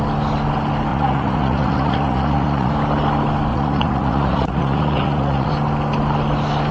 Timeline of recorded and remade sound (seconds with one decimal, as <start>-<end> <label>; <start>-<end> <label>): 0.0-0.9 recorded; 0.9-2.7 remade; 2.7-3.5 recorded; 3.5-5.5 remade; 5.5-6.7 recorded